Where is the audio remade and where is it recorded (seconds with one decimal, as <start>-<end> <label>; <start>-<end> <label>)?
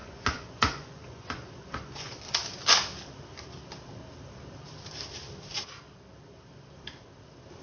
0.0-2.2 remade; 2.2-7.6 recorded